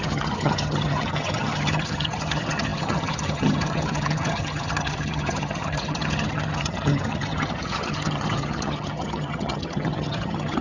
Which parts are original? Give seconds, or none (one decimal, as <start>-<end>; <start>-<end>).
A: none

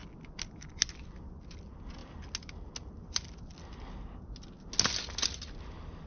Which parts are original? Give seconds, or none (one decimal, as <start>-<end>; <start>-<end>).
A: 0.0-6.1

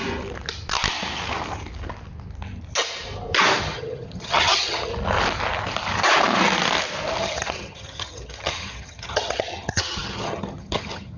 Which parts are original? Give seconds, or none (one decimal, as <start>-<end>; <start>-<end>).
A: 0.0-3.6; 4.9-7.2